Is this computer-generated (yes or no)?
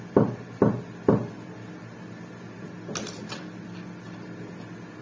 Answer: no